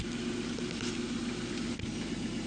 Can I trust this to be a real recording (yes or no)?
yes